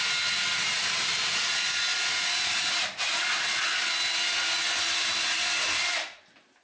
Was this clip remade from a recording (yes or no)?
no